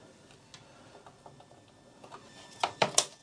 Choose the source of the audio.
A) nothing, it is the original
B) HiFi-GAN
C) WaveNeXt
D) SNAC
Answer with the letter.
A